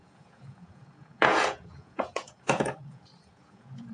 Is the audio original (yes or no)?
no